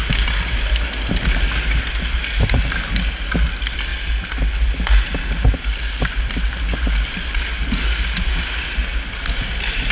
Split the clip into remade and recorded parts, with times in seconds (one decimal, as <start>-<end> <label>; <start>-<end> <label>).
0.0-9.9 recorded